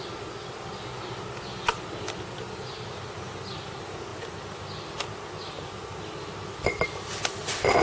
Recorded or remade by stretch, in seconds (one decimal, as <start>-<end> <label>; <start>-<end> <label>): 0.0-7.8 recorded